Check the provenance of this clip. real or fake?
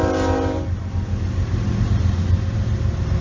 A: real